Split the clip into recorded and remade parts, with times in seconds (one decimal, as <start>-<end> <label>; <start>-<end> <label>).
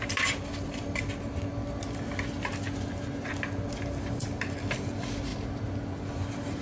0.0-6.6 recorded